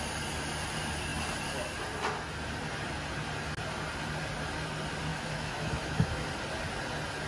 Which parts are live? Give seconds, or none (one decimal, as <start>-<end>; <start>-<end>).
0.0-5.1; 6.3-7.3